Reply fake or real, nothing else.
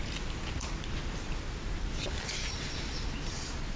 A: real